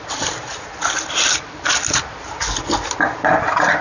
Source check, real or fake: real